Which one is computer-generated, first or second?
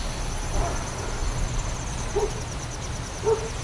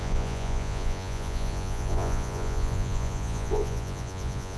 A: second